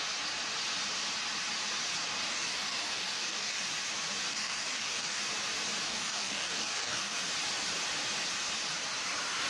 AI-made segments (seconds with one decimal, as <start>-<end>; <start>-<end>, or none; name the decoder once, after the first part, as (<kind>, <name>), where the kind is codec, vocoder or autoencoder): 2.3-3.6 (codec, DAC); 4.3-5.2; 5.9-7.2